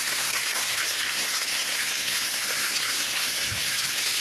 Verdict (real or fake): fake